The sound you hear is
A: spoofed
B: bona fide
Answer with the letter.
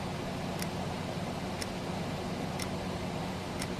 B